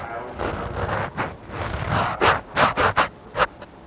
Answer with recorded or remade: recorded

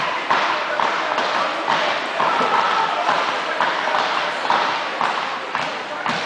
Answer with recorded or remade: recorded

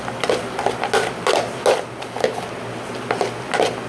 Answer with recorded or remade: recorded